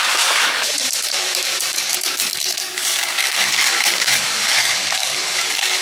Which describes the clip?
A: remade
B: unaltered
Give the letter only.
A